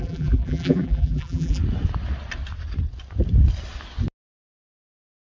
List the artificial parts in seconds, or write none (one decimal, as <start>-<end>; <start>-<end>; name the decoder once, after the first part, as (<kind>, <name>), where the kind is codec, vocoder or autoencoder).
0.0-1.6 (vocoder, BigVGAN v2); 4.8-5.4